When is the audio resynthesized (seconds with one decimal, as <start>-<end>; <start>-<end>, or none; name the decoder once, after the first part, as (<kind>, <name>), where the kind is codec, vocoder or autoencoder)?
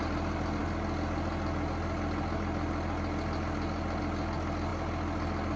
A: none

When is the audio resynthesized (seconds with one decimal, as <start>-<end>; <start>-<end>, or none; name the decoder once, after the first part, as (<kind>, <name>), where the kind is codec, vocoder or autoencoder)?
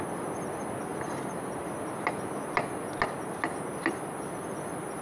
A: none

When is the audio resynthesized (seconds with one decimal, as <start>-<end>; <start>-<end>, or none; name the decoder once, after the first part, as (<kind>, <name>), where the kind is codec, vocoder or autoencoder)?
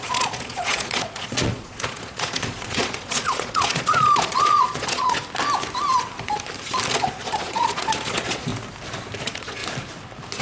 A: 0.0-5.2 (vocoder, Vocos); 6.9-8.5; 9.2-9.6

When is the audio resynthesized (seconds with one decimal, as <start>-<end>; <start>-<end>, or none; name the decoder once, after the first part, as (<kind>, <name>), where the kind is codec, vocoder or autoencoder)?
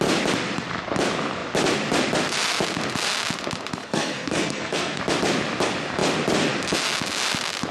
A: 3.8-5.0 (codec, SNAC)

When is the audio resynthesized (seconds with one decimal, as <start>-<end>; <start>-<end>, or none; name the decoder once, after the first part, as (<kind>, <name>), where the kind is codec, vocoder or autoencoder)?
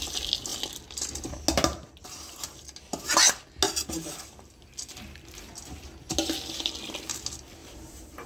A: 7.6-8.3 (vocoder, BigVGAN v2)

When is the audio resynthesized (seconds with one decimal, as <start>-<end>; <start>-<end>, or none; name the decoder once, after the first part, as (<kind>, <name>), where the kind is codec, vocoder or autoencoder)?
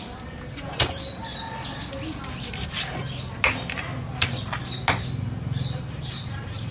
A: 0.0-1.2 (vocoder, BigVGAN v2); 5.2-6.7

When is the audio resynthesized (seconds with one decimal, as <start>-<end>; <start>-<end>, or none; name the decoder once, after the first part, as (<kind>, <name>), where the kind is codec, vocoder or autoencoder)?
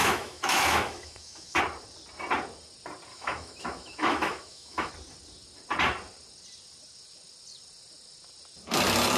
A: 0.0-1.6 (autoencoder, DAC-VAE); 3.1-4.9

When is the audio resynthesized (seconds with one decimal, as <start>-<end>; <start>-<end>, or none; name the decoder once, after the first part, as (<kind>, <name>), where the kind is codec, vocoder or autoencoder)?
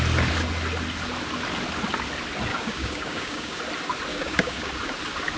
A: 2.5-3.6 (codec, DAC); 4.1-4.7